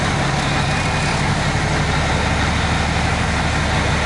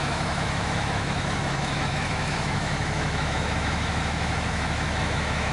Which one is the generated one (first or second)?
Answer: second